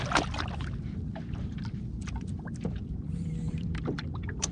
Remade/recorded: remade